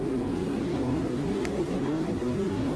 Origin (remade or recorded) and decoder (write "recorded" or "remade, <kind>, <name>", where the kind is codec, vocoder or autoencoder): remade, codec, SNAC